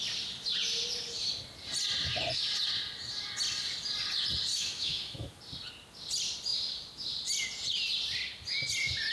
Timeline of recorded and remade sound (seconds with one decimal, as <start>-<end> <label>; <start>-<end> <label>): 0.0-4.5 recorded; 4.5-5.4 remade; 5.4-9.1 recorded